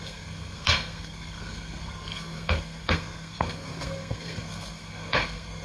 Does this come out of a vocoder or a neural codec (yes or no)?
yes